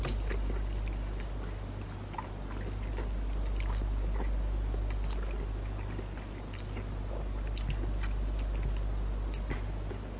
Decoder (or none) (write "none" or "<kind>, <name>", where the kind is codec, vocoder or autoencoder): none